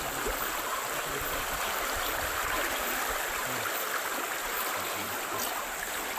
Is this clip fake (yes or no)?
no